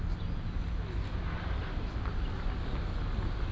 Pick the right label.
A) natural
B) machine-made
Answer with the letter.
A